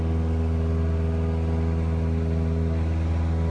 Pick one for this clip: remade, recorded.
recorded